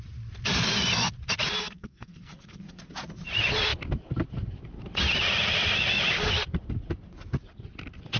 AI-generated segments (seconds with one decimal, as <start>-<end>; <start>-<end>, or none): 1.6-2.8